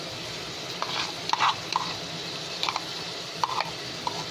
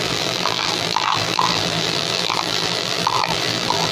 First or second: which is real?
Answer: first